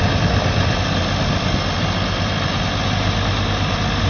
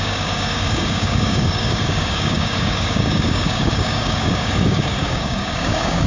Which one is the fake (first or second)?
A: second